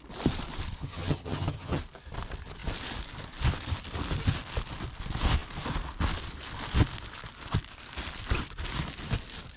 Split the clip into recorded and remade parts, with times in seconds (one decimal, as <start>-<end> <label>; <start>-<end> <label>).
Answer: 0.0-0.8 recorded; 0.8-1.8 remade; 1.8-9.6 recorded